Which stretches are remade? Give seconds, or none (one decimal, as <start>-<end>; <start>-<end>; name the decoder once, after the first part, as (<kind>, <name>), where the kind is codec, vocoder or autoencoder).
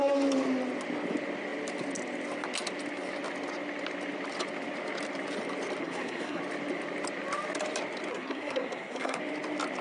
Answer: 5.8-6.4 (codec, SNAC); 8.1-9.2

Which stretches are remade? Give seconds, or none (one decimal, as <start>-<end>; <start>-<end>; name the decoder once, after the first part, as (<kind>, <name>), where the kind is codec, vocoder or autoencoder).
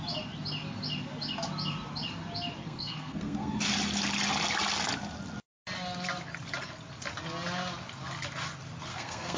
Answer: 2.6-3.6 (codec, SNAC); 8.9-9.4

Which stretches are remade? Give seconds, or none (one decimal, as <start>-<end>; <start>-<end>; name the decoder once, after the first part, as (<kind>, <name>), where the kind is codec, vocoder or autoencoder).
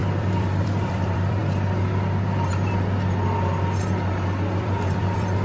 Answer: 0.0-1.4 (vocoder, BigVGAN v2); 4.6-5.4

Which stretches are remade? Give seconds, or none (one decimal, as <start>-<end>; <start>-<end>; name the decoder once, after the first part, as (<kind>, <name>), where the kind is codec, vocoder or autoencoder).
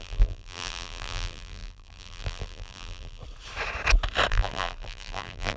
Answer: 0.0-3.2 (vocoder, BigVGAN v2); 4.3-5.6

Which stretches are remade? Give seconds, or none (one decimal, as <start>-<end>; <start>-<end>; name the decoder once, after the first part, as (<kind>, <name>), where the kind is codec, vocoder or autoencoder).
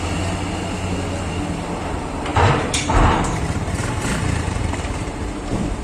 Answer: 2.3-5.8 (vocoder, BigVGAN v2)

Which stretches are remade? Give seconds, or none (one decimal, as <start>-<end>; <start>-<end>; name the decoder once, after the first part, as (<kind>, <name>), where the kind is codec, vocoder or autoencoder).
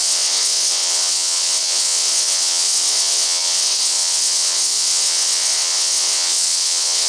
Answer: 0.0-7.1 (vocoder, WaveNeXt)